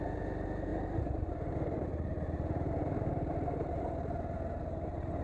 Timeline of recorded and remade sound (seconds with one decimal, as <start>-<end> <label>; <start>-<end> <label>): 0.0-0.7 recorded; 0.7-3.8 remade; 3.8-5.2 recorded